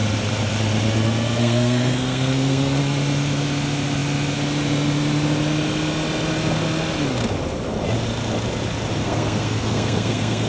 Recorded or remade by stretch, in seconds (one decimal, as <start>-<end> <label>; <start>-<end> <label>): 0.0-1.4 recorded; 1.4-2.8 remade; 2.8-9.0 recorded; 9.0-10.5 remade